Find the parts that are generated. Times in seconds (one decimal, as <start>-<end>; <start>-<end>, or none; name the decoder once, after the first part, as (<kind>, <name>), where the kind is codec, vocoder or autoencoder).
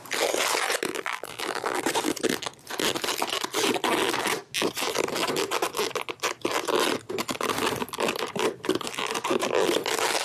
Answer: 0.9-1.8 (vocoder, BigVGAN v2)